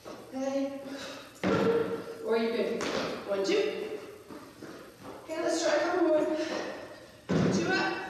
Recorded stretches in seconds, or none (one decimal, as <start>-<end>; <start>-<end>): 0.0-5.7; 7.6-8.1